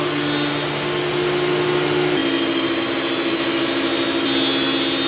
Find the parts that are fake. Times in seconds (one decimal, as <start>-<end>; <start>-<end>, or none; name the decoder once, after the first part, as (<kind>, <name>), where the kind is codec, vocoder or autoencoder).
none